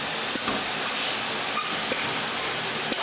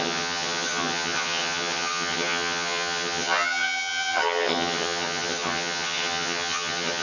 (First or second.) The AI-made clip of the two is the second